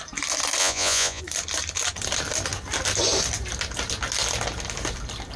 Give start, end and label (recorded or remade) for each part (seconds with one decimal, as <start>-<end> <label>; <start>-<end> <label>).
0.0-0.6 recorded; 0.6-1.2 remade; 1.2-5.4 recorded